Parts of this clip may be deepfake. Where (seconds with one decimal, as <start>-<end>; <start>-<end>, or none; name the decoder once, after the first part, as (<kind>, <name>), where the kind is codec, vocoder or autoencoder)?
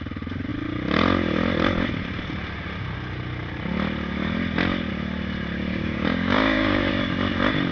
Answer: 5.7-6.9 (codec, DAC)